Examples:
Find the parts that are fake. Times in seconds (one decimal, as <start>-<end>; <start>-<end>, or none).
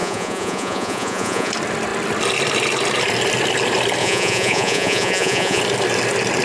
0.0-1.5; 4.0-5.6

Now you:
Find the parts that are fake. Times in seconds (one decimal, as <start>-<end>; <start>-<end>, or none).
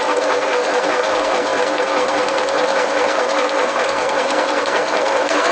0.0-5.5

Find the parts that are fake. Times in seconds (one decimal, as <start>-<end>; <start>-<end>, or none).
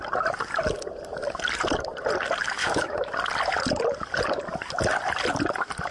2.6-3.1